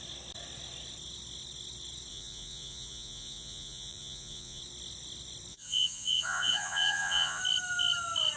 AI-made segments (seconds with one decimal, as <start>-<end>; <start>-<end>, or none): 2.1-4.6; 5.5-7.4